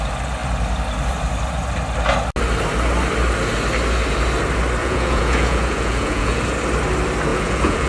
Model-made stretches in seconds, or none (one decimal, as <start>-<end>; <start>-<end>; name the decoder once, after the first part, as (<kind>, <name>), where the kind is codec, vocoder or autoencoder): 4.8-6.4 (vocoder, Vocos); 7.3-7.9